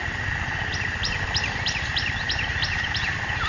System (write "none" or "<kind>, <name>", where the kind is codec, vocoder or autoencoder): none